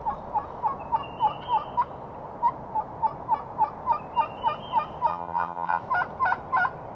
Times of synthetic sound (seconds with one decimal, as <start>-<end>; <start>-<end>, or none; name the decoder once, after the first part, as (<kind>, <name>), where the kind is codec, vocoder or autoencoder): 5.1-5.8 (vocoder, HiFi-GAN)